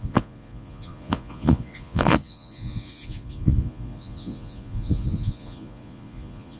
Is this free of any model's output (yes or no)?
no